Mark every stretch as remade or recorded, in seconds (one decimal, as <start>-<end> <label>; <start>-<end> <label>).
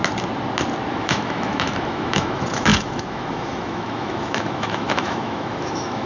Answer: 0.0-0.9 recorded; 0.9-6.1 remade